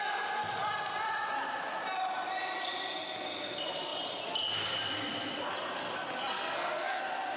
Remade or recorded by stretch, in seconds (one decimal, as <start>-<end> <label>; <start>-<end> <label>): 0.0-6.3 recorded; 6.3-7.0 remade; 7.0-7.4 recorded